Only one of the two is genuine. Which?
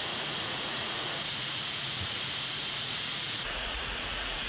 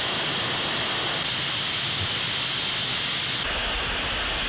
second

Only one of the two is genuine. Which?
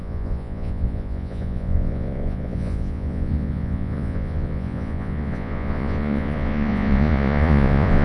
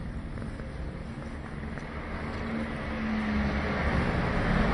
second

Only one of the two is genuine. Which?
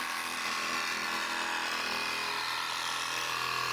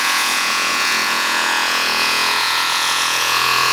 first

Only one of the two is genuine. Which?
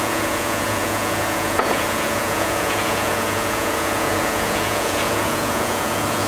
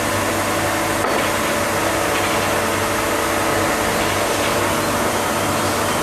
second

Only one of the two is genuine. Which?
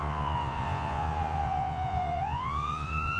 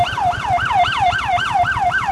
second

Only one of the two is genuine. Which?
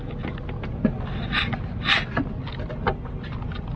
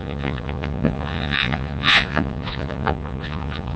first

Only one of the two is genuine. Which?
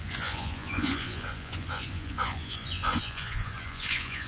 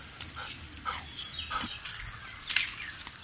second